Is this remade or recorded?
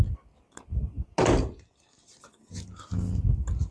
recorded